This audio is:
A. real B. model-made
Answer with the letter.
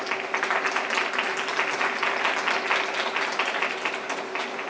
A